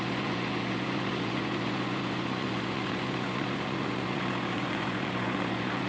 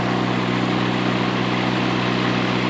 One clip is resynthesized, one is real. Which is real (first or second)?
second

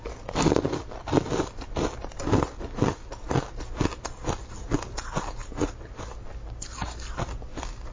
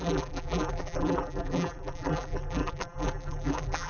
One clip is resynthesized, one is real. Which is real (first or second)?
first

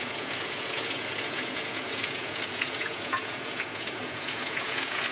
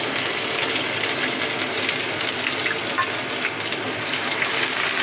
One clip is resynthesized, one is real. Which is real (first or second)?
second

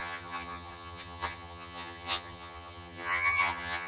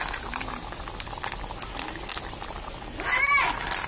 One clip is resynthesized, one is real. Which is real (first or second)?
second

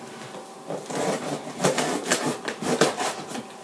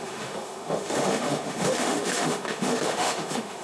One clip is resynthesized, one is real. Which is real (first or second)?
first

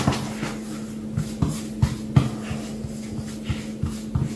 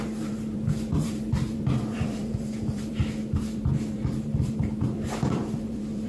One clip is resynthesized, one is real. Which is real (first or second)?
first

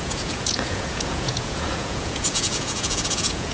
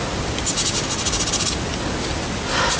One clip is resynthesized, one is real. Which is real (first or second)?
second